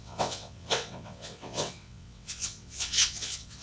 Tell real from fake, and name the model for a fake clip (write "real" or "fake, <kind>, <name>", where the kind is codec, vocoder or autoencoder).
fake, vocoder, WaveNeXt